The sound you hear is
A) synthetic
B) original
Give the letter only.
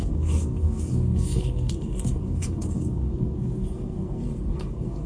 A